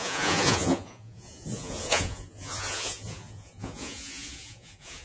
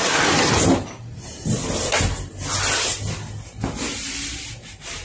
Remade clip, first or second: first